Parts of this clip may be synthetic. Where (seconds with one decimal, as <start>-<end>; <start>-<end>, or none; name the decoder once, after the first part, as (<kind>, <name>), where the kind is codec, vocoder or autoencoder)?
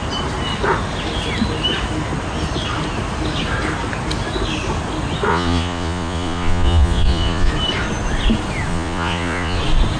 5.3-7.5 (vocoder, Vocos); 8.7-9.6